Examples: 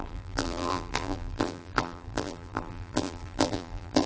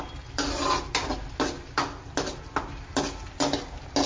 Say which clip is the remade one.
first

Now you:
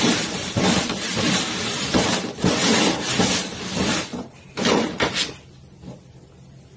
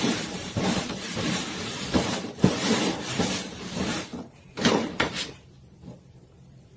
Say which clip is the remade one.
second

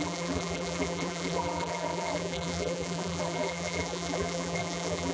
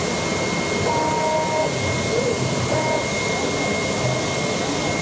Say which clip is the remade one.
first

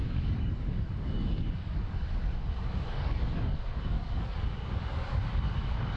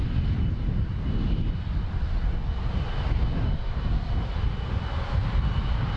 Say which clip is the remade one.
first